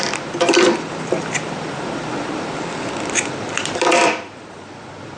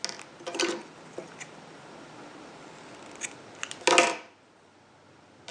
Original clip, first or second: second